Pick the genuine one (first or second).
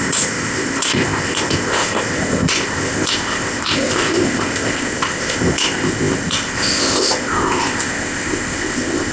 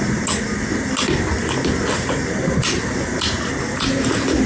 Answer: second